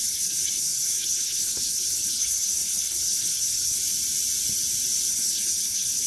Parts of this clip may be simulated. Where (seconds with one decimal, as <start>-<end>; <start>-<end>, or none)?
0.0-3.8; 5.1-6.1